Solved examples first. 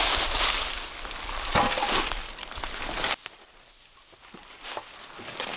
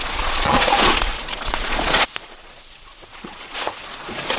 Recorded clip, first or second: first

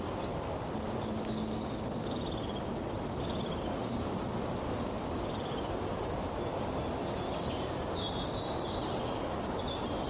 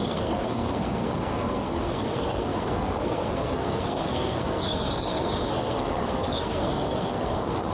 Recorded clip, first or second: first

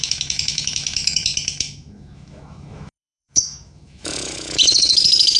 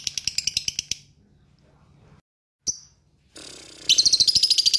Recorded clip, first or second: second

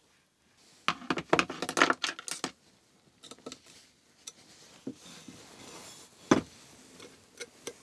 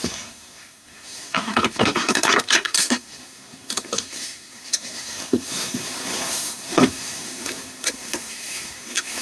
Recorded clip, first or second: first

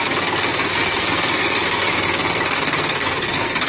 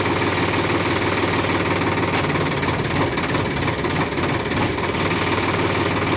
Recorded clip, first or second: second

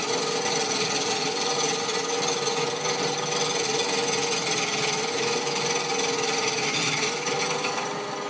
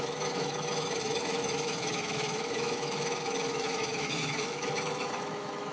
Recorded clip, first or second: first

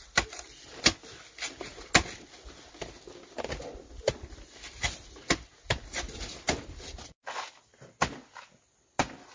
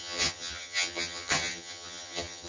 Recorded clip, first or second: first